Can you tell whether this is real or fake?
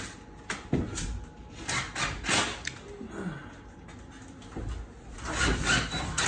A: real